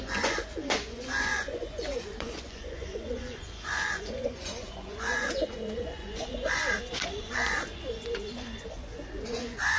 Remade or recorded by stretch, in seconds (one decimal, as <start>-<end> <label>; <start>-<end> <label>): 0.0-9.8 remade